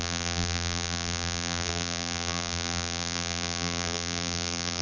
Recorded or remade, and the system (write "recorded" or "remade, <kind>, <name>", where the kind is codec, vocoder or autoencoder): remade, vocoder, BigVGAN v2